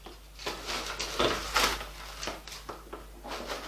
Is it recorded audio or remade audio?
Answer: recorded